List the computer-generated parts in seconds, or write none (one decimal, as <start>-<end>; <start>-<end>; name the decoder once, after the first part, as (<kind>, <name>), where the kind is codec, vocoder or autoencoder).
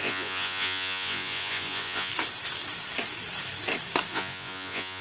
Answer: 0.0-2.1 (vocoder, Vocos); 4.1-5.0